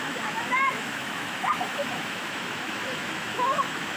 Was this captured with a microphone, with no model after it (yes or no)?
no